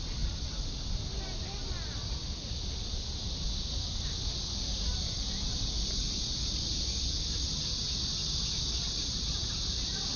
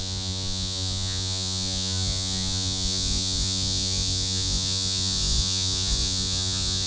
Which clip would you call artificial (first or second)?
second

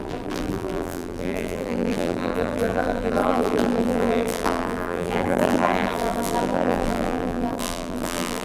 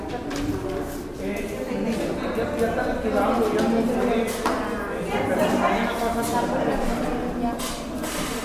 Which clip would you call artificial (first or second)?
first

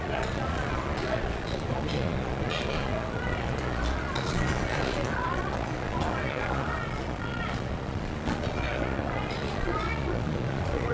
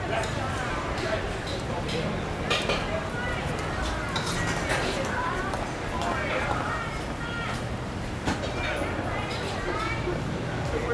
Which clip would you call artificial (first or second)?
first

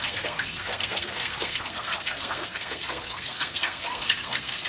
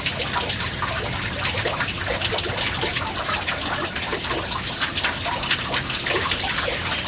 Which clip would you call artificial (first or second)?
first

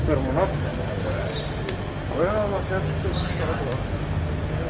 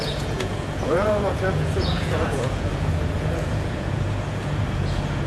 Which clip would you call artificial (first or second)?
second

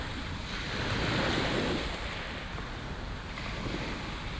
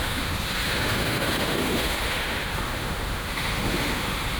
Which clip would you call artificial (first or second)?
second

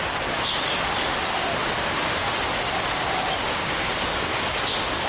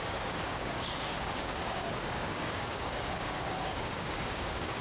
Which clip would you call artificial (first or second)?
second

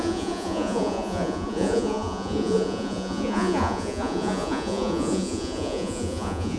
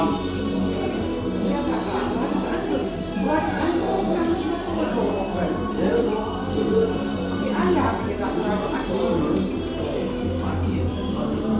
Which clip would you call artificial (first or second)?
first